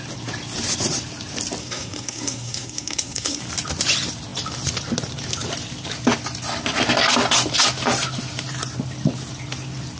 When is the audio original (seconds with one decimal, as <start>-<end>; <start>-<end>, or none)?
0.0-1.6; 3.4-10.0